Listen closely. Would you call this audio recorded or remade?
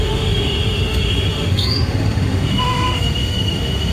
remade